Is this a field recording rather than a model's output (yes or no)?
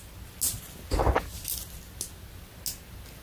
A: yes